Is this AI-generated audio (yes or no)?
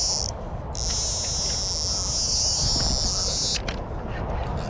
no